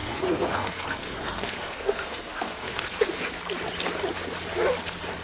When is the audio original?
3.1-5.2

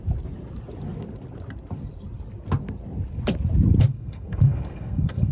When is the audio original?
0.0-3.9

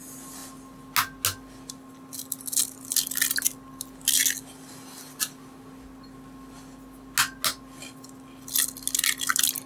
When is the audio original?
0.0-9.7

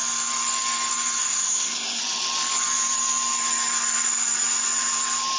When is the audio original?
0.0-1.2; 2.0-5.4

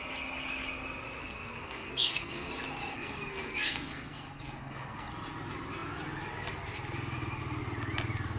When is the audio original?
0.0-1.2; 2.5-2.9; 5.1-8.4

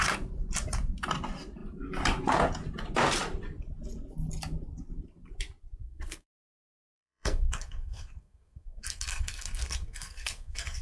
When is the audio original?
0.0-5.8

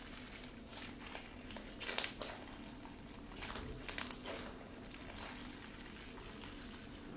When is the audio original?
0.0-7.2